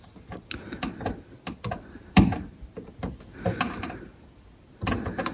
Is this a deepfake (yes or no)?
no